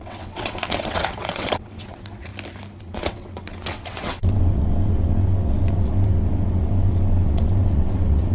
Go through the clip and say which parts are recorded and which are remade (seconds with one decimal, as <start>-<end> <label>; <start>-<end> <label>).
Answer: 0.0-2.3 remade; 2.3-2.8 recorded; 2.8-8.3 remade